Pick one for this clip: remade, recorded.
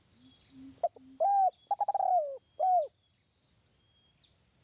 recorded